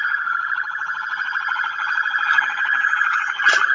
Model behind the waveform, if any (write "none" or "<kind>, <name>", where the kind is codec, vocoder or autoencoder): vocoder, HiFi-GAN